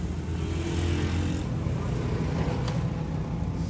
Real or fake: real